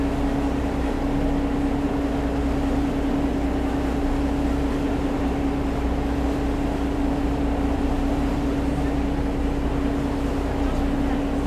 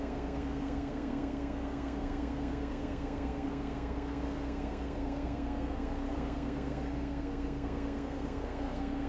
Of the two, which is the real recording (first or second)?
first